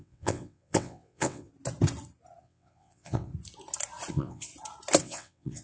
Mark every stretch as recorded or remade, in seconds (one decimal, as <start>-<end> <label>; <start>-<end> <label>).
0.0-1.5 remade; 1.5-2.4 recorded; 2.4-3.3 remade; 3.3-4.1 recorded; 4.1-4.5 remade; 4.5-5.0 recorded; 5.0-5.6 remade

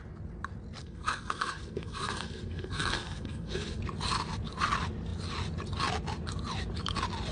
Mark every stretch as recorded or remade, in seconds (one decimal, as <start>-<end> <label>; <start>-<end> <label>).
0.0-0.8 recorded; 0.8-3.8 remade; 3.8-7.3 recorded

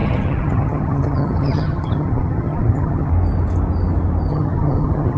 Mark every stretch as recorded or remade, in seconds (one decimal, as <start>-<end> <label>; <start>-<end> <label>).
0.0-3.1 remade; 3.1-4.3 recorded; 4.3-5.2 remade

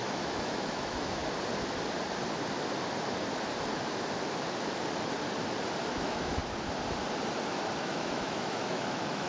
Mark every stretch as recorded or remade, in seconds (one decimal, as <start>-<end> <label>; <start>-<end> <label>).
0.0-1.2 remade; 1.2-5.9 recorded; 5.9-6.4 remade; 6.4-7.8 recorded; 7.8-9.3 remade

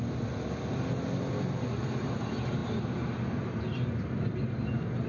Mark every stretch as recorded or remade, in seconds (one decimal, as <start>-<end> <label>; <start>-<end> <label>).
0.0-5.1 recorded

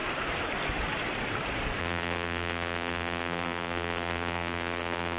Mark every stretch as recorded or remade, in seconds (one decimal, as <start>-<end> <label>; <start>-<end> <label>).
0.0-1.8 recorded; 1.8-5.2 remade

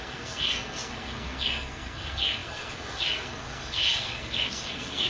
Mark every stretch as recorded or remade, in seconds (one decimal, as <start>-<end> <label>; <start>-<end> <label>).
0.0-5.1 remade